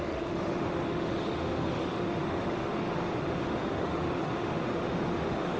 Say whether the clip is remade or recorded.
remade